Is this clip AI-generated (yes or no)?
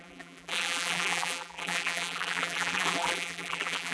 yes